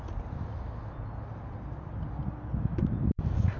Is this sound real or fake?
real